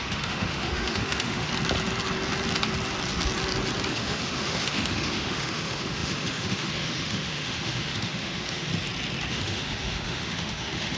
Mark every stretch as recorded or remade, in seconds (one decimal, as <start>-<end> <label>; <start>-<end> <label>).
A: 0.0-1.5 remade; 1.5-3.9 recorded; 3.9-8.7 remade; 8.7-9.3 recorded; 9.3-11.0 remade